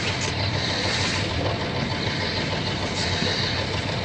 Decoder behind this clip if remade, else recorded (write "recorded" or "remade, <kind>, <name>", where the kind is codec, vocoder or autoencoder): recorded